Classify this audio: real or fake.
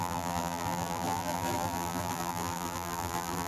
fake